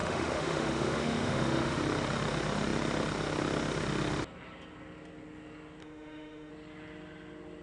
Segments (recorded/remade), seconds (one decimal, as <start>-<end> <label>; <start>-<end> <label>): 0.0-1.8 remade; 1.8-5.8 recorded; 5.8-6.5 remade; 6.5-7.6 recorded